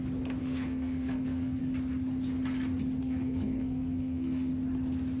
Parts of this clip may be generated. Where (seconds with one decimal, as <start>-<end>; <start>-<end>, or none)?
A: 0.4-1.6; 3.0-4.5